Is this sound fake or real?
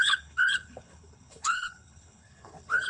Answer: fake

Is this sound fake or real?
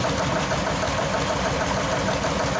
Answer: real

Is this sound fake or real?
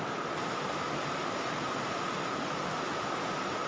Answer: real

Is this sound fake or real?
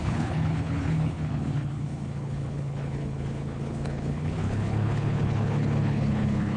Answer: fake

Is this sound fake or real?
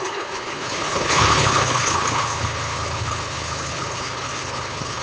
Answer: fake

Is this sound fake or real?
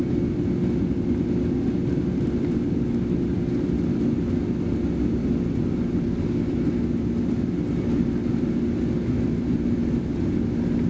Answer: real